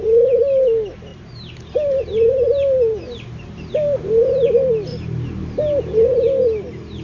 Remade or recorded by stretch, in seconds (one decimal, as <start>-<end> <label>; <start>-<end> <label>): 0.0-1.1 recorded; 1.1-3.7 remade; 3.7-4.9 recorded; 4.9-6.1 remade; 6.1-7.0 recorded